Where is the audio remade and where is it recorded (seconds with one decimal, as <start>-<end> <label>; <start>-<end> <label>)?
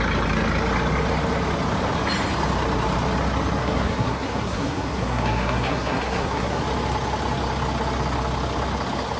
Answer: 0.0-3.6 recorded; 3.6-6.6 remade; 6.6-9.2 recorded